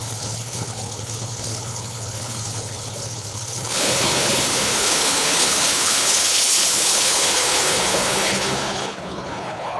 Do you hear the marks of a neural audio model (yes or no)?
yes